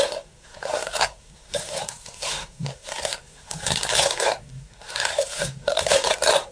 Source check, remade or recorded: remade